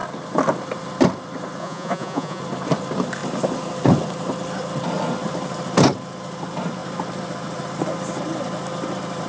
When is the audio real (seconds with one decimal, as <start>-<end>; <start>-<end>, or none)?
0.0-1.6; 2.4-9.3